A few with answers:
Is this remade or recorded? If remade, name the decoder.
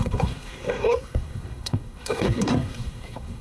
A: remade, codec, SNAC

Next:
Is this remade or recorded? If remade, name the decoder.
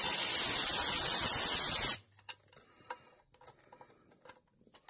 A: recorded